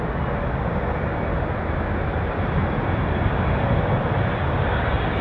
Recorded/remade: recorded